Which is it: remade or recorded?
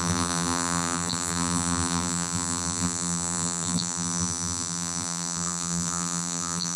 remade